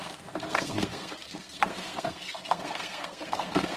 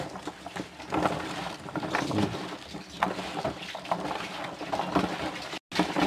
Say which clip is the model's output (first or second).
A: first